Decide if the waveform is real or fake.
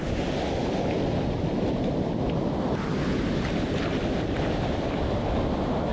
real